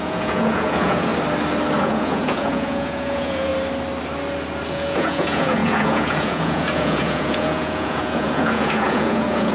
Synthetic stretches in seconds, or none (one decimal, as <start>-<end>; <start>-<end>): 0.0-1.1; 1.8-3.5; 4.7-9.5